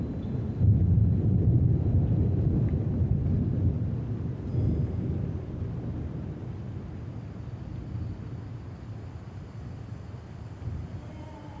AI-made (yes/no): no